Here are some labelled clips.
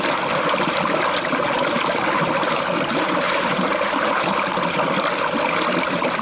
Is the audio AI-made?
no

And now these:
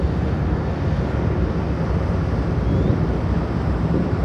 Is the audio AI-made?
no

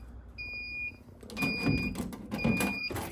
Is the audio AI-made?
no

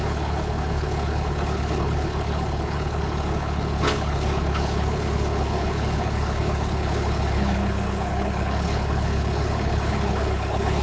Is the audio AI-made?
yes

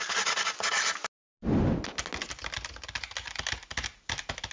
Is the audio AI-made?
no